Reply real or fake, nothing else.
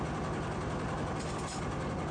real